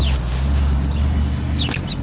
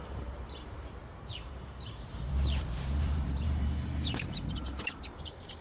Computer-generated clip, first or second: second